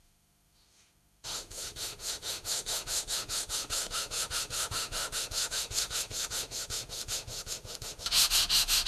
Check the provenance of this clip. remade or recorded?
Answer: remade